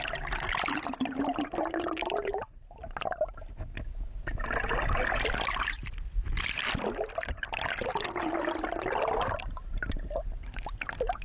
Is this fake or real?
real